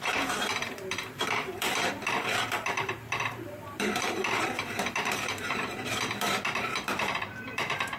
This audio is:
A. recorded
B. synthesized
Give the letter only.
B